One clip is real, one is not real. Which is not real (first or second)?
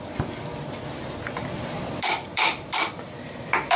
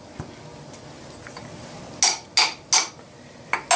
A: first